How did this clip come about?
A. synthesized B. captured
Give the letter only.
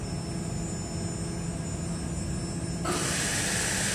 B